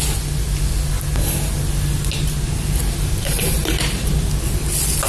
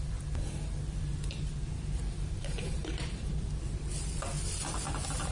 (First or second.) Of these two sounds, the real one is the first